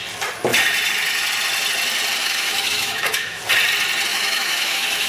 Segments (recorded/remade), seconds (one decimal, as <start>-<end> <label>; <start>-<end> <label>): 0.0-2.2 recorded; 2.2-3.4 remade; 3.4-4.1 recorded; 4.1-5.1 remade